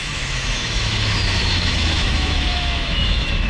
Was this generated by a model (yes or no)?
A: yes